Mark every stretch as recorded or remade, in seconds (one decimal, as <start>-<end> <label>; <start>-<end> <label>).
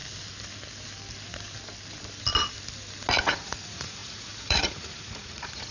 0.0-3.2 recorded; 3.2-5.7 remade